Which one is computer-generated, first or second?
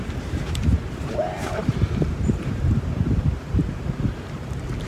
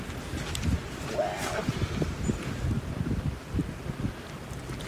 first